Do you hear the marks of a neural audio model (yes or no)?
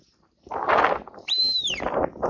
no